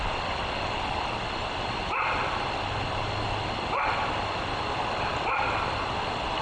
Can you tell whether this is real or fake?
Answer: real